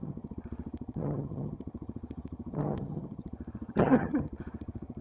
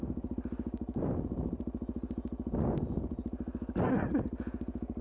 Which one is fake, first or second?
first